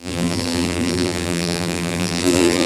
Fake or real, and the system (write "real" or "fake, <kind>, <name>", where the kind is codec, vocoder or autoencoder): fake, vocoder, BigVGAN v2